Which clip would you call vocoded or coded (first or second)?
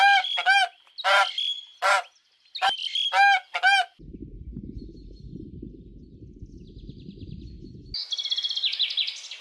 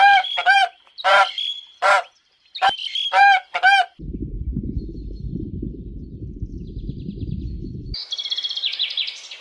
second